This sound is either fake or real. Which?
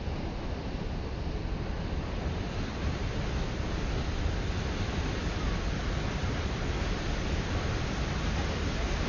real